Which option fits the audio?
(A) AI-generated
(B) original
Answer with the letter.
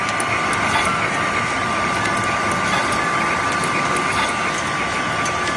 B